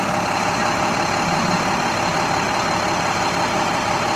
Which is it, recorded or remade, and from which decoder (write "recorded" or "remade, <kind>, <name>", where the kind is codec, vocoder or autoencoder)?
remade, vocoder, BigVGAN v2